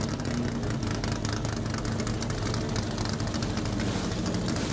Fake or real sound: real